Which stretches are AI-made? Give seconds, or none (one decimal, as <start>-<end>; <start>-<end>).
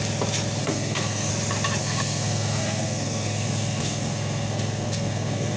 0.6-1.3; 1.8-5.6